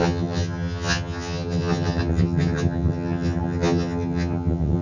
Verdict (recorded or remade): remade